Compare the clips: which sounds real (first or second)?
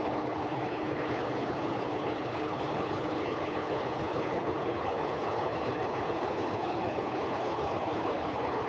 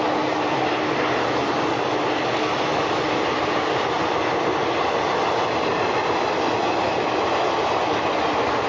second